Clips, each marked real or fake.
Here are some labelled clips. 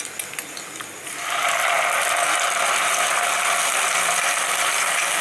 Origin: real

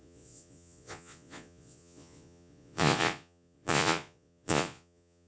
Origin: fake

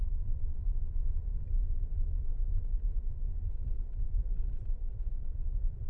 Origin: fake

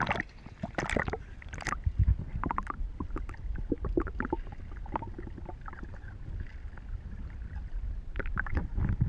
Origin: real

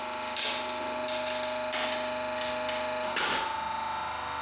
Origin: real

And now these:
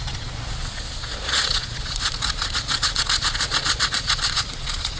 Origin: fake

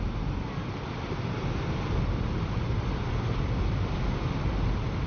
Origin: real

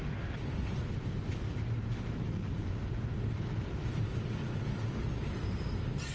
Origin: real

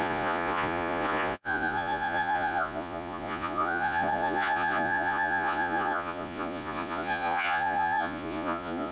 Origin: fake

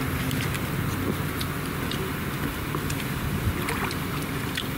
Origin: real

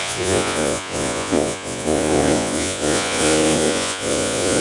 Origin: fake